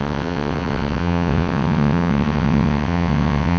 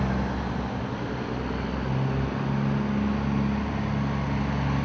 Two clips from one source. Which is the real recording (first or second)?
second